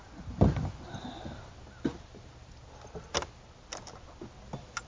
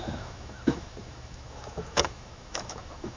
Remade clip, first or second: second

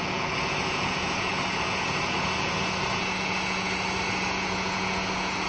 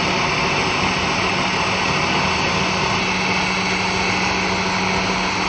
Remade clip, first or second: first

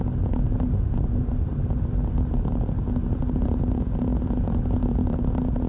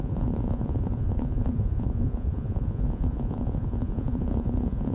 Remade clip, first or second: second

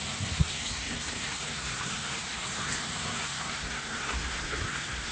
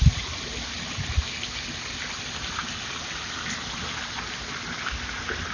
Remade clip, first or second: first